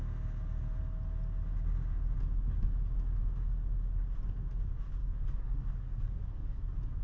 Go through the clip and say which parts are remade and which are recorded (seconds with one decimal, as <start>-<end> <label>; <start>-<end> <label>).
0.0-5.0 recorded; 5.0-6.6 remade; 6.6-7.0 recorded